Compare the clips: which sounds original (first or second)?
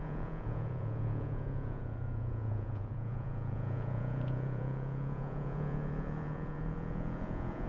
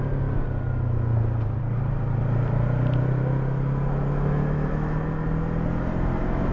second